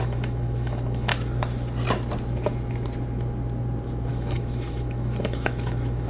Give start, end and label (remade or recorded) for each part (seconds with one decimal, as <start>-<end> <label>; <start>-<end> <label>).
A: 0.0-1.1 remade; 1.1-4.1 recorded; 4.1-6.1 remade